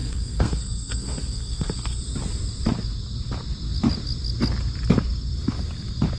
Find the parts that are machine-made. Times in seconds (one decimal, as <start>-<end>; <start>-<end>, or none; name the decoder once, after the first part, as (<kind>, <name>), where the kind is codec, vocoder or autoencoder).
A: 0.0-2.0 (codec, SNAC)